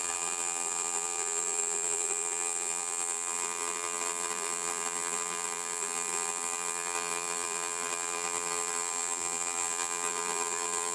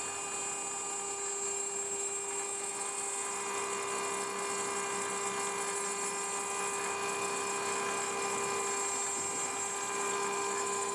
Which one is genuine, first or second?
second